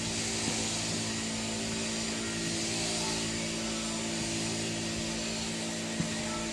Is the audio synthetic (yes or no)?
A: no